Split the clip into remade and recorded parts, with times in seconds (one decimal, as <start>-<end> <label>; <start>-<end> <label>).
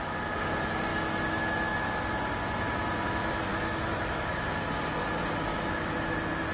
0.0-0.9 recorded; 0.9-1.9 remade; 1.9-3.5 recorded; 3.5-4.8 remade; 4.8-5.5 recorded; 5.5-6.5 remade